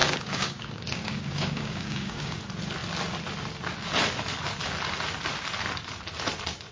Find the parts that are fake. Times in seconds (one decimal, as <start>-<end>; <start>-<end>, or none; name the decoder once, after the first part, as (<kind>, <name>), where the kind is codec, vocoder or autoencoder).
0.0-2.4 (codec, DAC)